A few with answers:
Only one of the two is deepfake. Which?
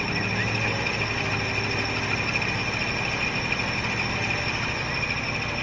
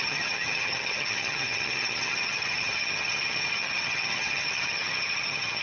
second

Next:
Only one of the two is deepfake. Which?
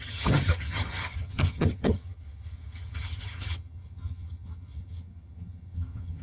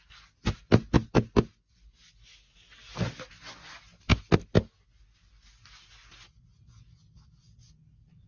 first